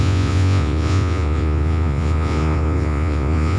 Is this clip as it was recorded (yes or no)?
no